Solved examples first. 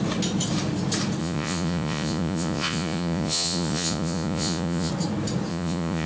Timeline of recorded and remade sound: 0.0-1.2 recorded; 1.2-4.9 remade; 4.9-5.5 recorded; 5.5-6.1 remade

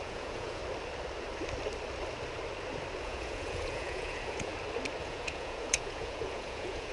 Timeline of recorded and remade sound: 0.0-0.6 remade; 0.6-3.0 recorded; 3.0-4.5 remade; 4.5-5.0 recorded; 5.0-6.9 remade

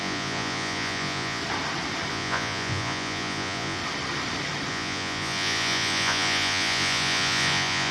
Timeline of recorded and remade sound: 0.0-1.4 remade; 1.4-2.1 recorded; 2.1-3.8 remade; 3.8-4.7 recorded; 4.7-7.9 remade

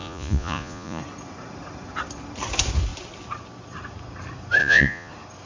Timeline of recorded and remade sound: 0.0-1.0 remade; 1.0-4.6 recorded; 4.6-5.1 remade; 5.1-5.5 recorded